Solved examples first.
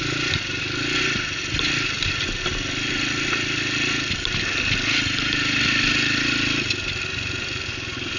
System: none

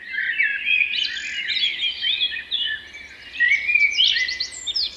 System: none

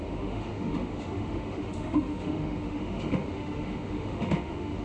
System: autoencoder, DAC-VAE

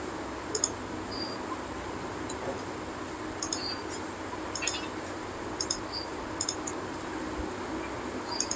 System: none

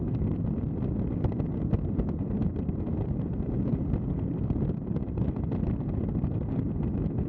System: none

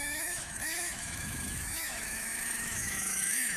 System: autoencoder, DAC-VAE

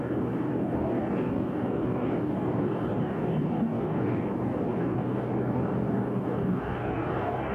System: codec, DAC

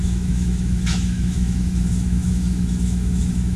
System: autoencoder, DAC-VAE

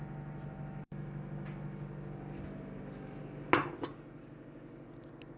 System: none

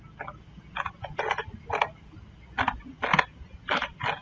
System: none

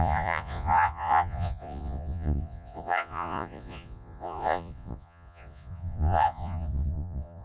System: vocoder, Vocos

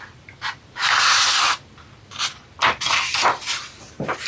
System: vocoder, BigVGAN v2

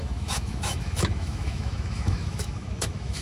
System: autoencoder, DAC-VAE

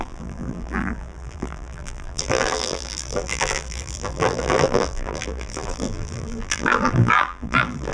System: vocoder, BigVGAN v2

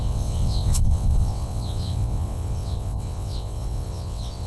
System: vocoder, WaveNeXt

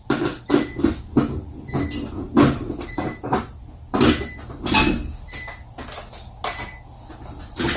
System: none